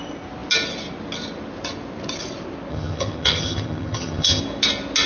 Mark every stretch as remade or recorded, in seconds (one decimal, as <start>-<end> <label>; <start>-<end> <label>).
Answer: 0.0-2.7 recorded; 2.7-4.4 remade; 4.4-5.1 recorded